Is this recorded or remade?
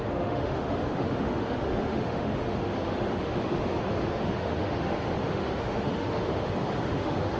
remade